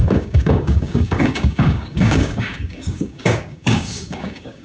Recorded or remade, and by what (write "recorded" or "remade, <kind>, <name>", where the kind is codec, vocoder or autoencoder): remade, codec, DAC